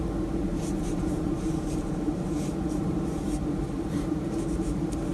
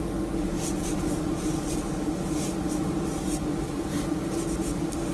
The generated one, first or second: first